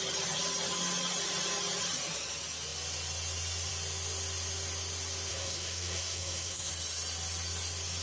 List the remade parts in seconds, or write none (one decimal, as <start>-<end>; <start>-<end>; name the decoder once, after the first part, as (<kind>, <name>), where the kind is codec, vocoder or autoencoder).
5.3-6.7 (codec, SNAC)